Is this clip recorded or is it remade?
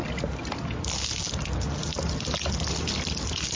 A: recorded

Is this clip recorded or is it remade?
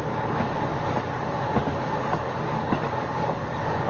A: remade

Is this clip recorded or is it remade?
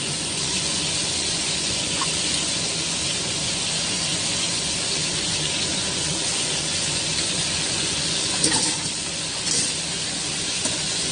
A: remade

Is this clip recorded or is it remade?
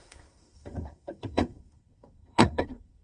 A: remade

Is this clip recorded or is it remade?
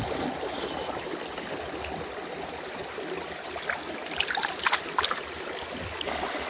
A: recorded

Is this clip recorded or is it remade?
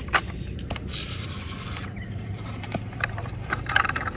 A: remade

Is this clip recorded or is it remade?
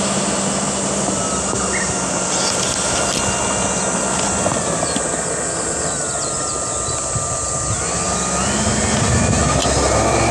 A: recorded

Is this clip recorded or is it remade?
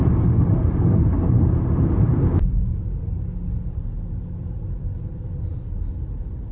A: recorded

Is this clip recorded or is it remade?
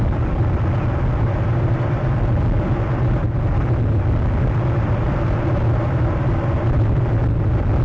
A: recorded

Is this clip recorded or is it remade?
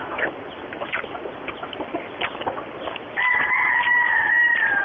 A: recorded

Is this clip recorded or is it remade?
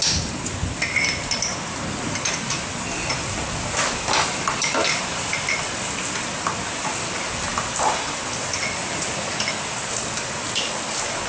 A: recorded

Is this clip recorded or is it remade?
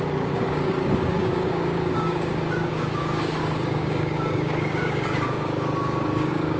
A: remade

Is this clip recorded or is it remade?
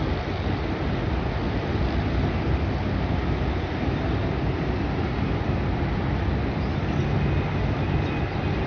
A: recorded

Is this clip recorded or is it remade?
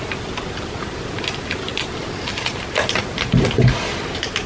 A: recorded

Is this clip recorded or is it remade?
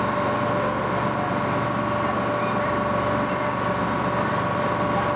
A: recorded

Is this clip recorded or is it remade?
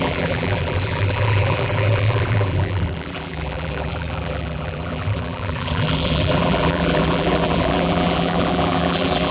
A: remade